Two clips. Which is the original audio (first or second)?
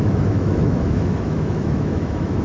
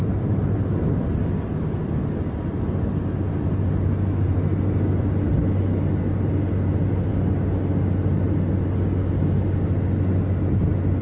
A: second